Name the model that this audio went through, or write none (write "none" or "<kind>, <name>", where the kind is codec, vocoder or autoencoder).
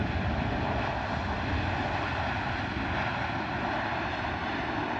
none